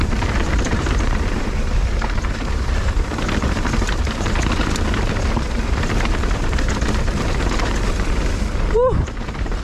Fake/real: fake